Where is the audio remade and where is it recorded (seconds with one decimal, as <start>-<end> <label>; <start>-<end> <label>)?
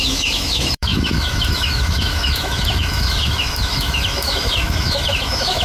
0.0-5.6 remade